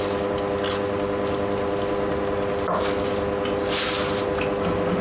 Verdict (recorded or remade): recorded